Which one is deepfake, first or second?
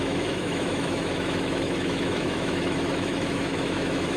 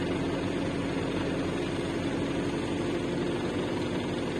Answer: first